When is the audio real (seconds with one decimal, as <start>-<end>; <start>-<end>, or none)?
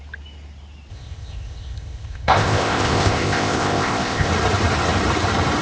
0.0-0.9; 4.3-5.6